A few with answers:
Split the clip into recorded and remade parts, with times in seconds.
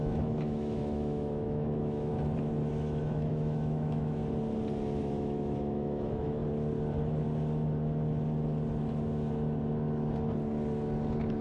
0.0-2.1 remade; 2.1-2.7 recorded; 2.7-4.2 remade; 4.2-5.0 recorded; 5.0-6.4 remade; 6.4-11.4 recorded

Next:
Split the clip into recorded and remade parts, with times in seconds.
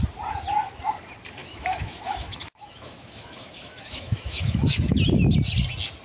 0.0-1.4 recorded; 1.4-5.0 remade; 5.0-6.0 recorded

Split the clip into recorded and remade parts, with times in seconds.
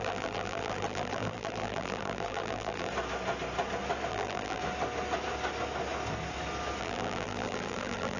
0.0-2.9 remade; 2.9-4.1 recorded; 4.1-4.6 remade; 4.6-6.8 recorded; 6.8-8.2 remade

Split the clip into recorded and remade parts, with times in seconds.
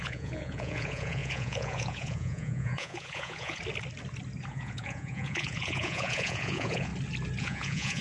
0.0-3.6 remade; 3.6-4.5 recorded; 4.5-6.9 remade; 6.9-7.4 recorded; 7.4-8.0 remade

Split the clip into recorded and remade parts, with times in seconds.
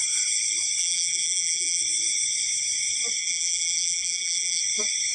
0.0-0.8 recorded; 0.8-1.8 remade; 1.8-3.2 recorded; 3.2-4.6 remade; 4.6-5.1 recorded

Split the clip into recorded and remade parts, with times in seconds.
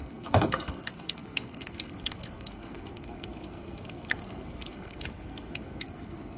0.0-6.4 remade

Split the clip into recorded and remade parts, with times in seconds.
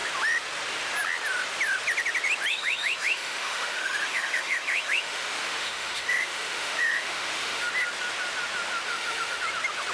0.0-2.5 recorded; 2.5-7.7 remade; 7.7-8.9 recorded; 8.9-9.4 remade; 9.4-9.9 recorded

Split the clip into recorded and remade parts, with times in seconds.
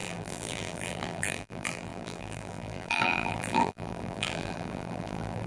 0.0-5.5 remade